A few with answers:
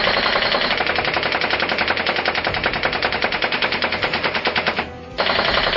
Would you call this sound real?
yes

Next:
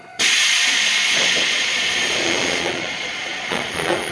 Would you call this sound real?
no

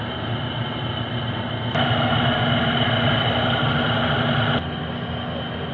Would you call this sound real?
yes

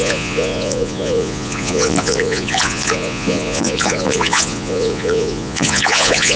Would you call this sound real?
no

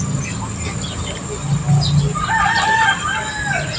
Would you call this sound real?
yes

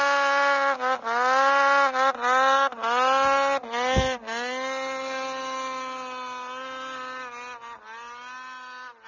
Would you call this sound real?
yes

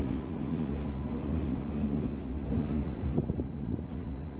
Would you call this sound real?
no